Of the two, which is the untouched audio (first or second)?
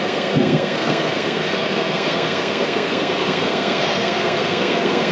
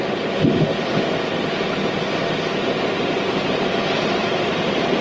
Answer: second